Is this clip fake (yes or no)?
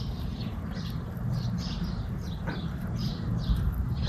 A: yes